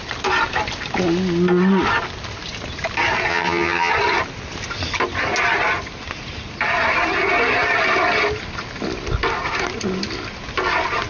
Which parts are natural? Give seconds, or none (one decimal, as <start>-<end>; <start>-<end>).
0.0-3.3; 3.9-11.1